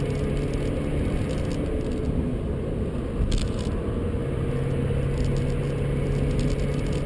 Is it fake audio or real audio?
real